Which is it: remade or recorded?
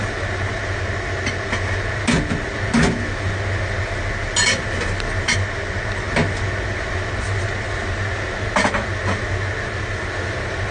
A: recorded